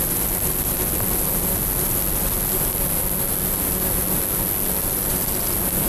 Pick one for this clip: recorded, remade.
recorded